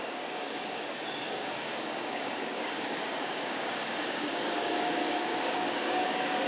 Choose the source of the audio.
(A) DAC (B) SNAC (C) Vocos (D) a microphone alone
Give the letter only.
A